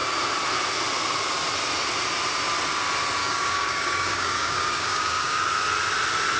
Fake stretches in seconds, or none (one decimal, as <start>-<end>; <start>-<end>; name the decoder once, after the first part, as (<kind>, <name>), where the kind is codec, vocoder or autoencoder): 3.2-5.5 (codec, DAC)